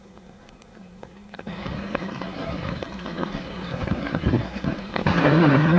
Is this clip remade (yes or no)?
yes